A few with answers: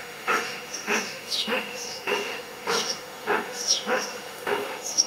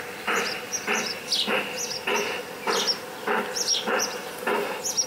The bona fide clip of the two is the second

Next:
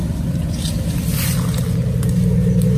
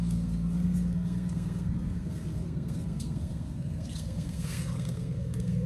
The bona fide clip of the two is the first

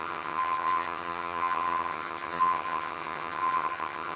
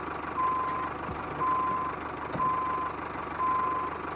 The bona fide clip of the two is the second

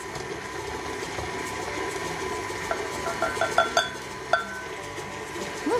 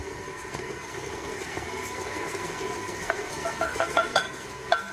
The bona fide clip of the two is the first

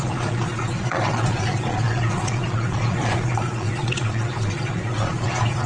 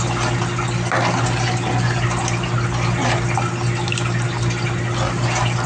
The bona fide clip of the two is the second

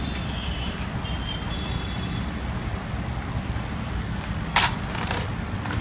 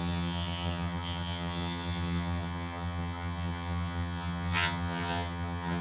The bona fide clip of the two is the first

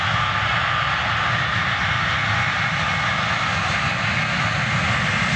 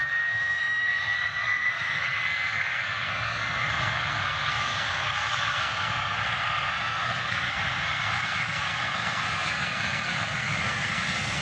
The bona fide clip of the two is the first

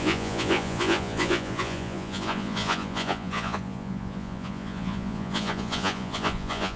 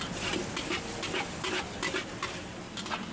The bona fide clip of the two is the second